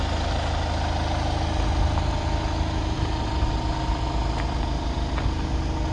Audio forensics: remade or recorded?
recorded